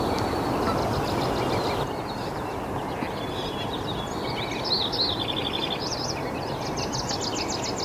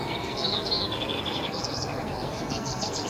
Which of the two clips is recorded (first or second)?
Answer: first